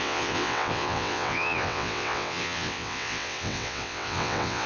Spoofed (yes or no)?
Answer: yes